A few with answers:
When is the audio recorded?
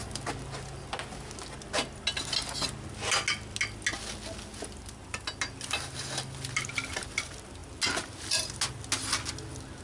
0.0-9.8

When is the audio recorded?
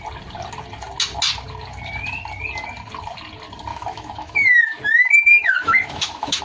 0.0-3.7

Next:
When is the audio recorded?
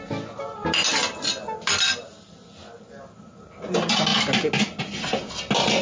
0.0-5.8